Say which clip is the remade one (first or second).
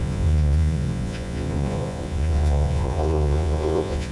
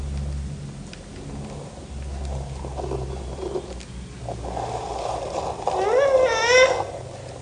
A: first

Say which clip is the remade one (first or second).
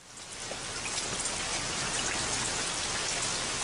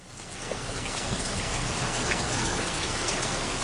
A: second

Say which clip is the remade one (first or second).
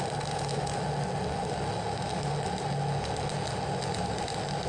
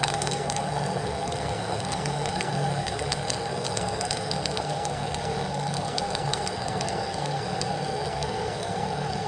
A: second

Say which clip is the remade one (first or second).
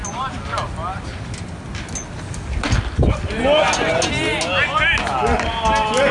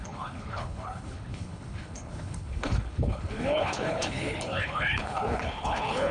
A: second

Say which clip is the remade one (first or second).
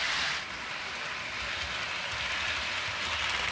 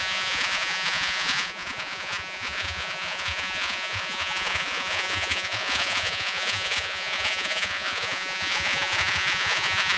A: second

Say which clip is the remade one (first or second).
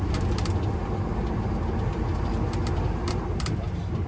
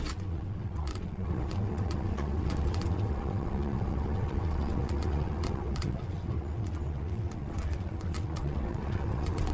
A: second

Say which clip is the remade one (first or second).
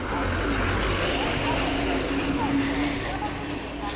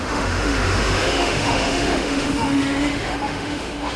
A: second